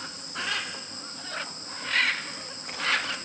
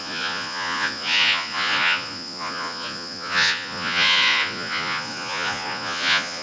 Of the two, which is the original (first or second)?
first